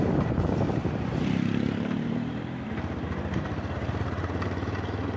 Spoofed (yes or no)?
yes